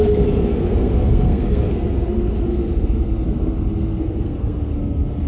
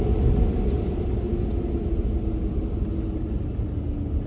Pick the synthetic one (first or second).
first